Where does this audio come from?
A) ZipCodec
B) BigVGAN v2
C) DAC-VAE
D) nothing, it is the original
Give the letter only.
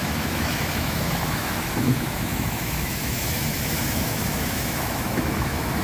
C